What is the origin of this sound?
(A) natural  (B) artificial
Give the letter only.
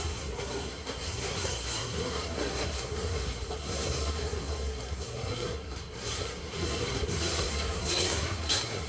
B